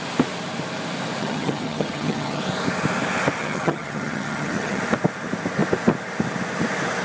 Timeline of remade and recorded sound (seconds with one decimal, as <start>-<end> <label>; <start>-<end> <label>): 0.0-1.2 recorded; 1.2-2.4 remade; 2.4-3.4 recorded; 3.4-4.8 remade; 4.8-7.0 recorded